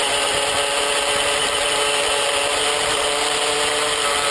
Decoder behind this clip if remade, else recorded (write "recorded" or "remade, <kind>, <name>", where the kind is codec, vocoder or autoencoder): recorded